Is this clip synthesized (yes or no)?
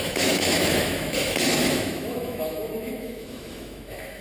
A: yes